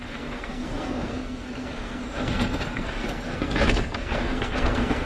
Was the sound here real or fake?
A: fake